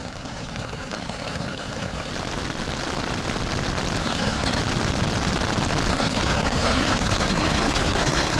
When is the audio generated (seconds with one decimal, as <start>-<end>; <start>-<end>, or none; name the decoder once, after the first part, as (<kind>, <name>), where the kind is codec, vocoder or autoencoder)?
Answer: 0.0-2.1 (codec, SNAC); 4.0-4.6; 5.9-8.4